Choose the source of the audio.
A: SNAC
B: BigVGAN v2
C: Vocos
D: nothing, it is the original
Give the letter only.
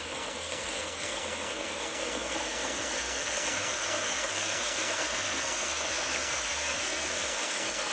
A